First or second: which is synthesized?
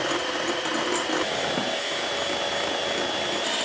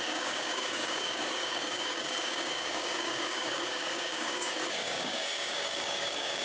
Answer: second